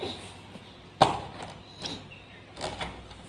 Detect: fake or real real